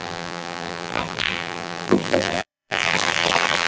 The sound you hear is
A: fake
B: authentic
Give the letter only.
A